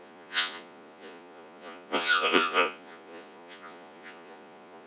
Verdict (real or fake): fake